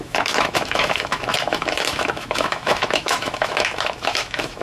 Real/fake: fake